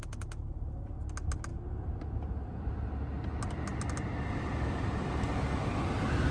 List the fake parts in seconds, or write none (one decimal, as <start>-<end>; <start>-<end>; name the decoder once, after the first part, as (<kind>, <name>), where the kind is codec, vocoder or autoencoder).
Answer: none